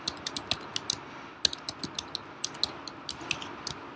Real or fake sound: real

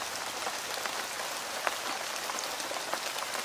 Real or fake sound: real